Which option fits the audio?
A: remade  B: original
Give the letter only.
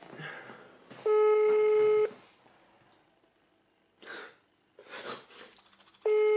B